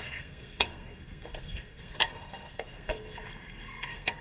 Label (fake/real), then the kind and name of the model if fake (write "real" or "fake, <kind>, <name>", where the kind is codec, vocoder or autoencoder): fake, codec, SNAC